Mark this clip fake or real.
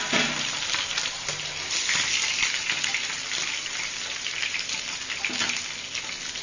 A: real